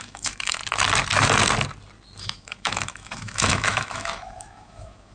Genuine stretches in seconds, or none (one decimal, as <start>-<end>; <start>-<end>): 0.6-2.2